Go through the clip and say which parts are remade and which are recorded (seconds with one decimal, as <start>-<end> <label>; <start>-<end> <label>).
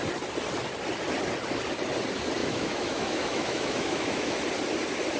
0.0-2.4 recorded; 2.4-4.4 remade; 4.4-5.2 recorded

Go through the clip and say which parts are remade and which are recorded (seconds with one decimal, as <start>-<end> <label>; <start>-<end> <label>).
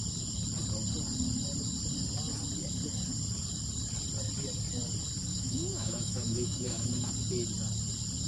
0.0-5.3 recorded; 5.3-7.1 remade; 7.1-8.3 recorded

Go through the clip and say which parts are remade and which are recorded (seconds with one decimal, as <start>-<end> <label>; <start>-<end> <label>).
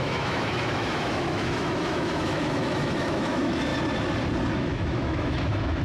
0.0-3.7 remade; 3.7-4.5 recorded; 4.5-5.8 remade